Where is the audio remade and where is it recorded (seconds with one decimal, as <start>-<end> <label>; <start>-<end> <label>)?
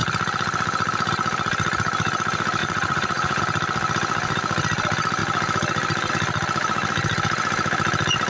0.0-2.6 recorded; 2.6-3.4 remade; 3.4-8.3 recorded